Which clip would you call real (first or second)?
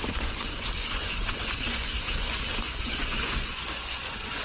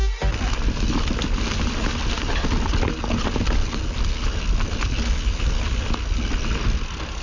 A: second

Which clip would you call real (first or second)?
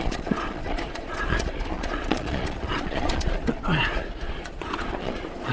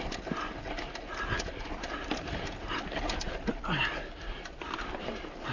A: second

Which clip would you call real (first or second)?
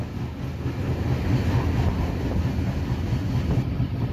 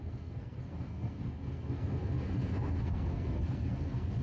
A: first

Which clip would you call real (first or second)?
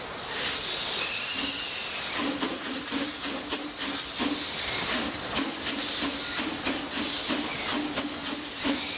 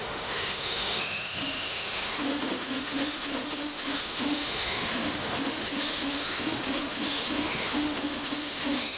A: first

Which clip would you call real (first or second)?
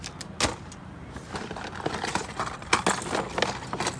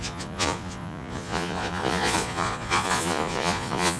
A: first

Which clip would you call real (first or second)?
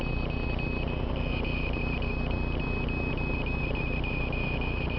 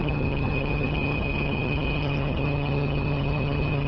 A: first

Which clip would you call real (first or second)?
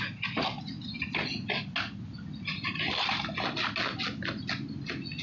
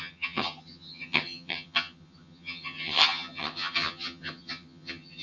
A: first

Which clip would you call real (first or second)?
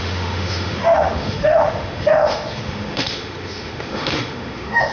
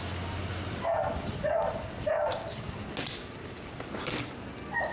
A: second